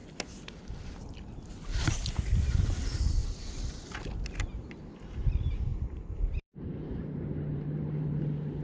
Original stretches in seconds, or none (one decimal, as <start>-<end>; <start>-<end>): 0.0-5.7; 6.9-7.5; 8.2-8.6